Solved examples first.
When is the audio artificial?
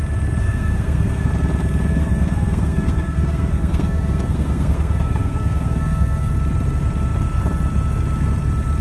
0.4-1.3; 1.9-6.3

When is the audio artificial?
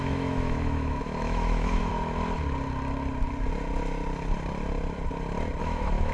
0.0-1.9; 5.6-6.1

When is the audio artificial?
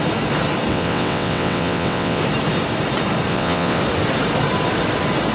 0.7-2.2; 3.3-3.8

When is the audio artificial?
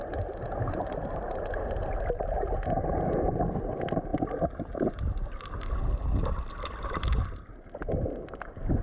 none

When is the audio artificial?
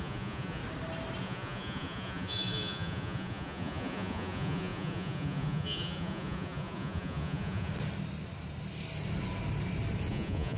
0.0-0.6; 1.2-7.7; 10.1-10.6